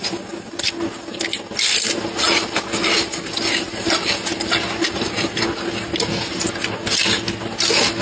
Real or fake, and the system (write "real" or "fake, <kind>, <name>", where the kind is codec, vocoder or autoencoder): real